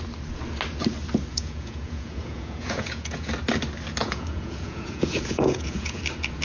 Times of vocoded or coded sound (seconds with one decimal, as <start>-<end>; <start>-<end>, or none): 1.3-3.3; 4.0-6.0